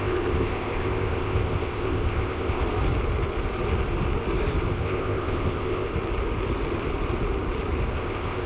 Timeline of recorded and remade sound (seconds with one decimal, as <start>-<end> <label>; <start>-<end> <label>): 0.0-2.6 remade; 2.6-4.7 recorded; 4.7-5.9 remade; 5.9-7.9 recorded; 7.9-8.5 remade